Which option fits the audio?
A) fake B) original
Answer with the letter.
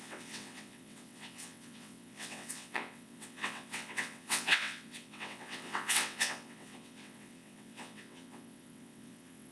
A